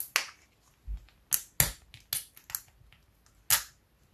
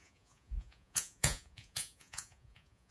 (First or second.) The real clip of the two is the first